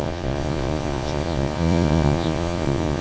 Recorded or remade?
remade